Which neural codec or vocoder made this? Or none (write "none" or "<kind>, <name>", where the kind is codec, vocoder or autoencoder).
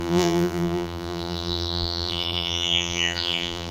vocoder, BigVGAN v2